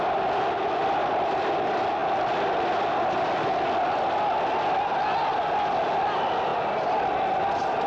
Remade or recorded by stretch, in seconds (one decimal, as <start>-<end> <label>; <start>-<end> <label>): 0.0-7.9 recorded